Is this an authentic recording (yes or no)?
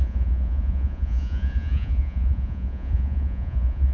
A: no